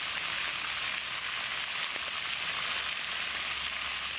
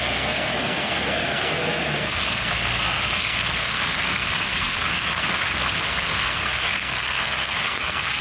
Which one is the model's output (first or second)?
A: second